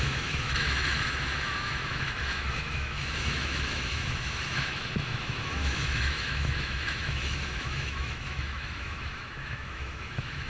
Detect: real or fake fake